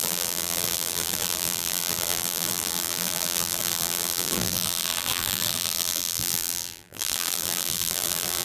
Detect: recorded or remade remade